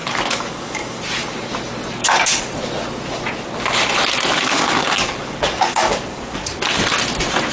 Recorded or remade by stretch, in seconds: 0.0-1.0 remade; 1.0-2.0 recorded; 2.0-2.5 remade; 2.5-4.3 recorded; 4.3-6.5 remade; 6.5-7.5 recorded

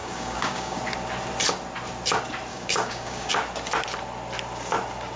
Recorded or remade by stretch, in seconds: 0.0-0.8 remade; 0.8-2.5 recorded; 2.5-3.3 remade; 3.3-5.2 recorded

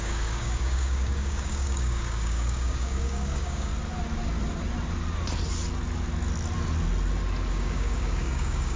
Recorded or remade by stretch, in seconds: 0.0-3.7 remade; 3.7-7.5 recorded; 7.5-8.8 remade